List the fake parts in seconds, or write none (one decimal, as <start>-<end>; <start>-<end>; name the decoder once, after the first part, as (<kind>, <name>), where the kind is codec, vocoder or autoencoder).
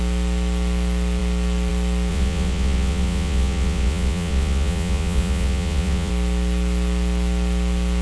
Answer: 2.1-6.1 (vocoder, Vocos)